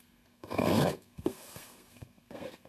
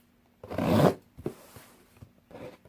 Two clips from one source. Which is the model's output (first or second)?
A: first